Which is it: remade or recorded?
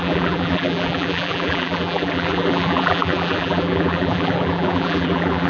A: remade